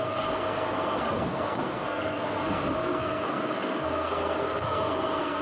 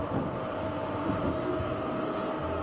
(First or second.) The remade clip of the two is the first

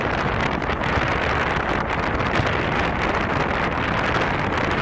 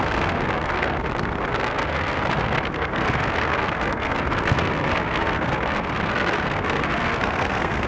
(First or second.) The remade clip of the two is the second